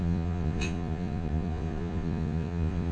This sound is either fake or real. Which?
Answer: fake